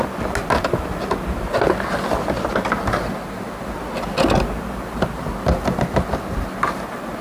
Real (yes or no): yes